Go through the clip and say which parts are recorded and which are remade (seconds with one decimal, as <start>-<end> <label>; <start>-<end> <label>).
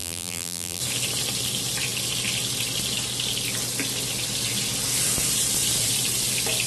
0.0-0.8 remade; 0.8-6.7 recorded